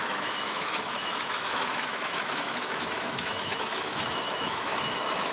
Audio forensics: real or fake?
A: fake